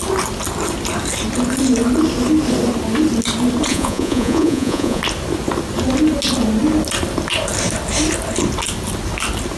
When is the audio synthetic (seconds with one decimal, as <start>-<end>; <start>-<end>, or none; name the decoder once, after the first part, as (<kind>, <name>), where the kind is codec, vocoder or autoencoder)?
3.7-5.0 (vocoder, Vocos)